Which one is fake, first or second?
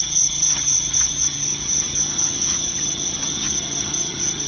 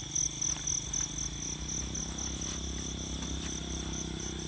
first